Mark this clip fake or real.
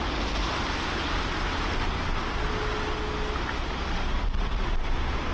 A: real